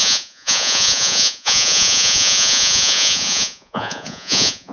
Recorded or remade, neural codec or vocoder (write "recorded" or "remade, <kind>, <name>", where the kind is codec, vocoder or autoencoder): remade, vocoder, Vocos